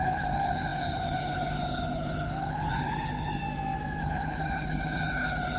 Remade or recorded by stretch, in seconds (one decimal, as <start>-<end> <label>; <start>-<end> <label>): 0.0-3.4 remade; 3.4-4.0 recorded; 4.0-5.6 remade